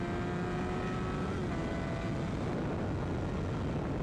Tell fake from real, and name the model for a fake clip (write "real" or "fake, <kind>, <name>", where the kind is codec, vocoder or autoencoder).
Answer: real